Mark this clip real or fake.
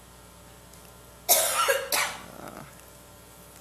real